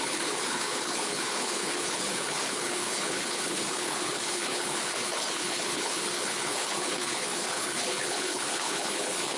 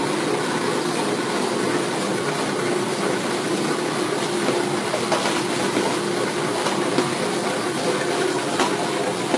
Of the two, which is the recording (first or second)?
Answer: second